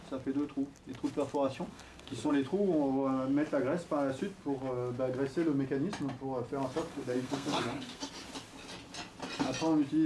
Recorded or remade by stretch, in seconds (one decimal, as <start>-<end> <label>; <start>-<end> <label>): 0.0-1.7 recorded; 1.7-2.3 remade; 2.3-6.9 recorded; 6.9-8.1 remade; 8.1-10.1 recorded